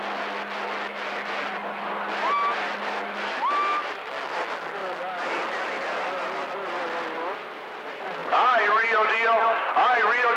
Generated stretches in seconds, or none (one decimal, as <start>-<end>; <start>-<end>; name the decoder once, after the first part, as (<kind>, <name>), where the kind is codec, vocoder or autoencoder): 8.2-10.4 (vocoder, BigVGAN v2)